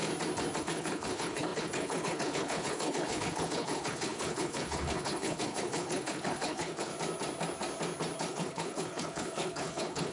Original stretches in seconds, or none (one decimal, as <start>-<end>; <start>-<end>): 0.0-0.6; 6.9-8.3